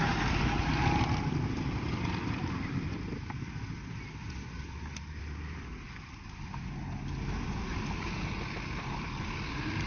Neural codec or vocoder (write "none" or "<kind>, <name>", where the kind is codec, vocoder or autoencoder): none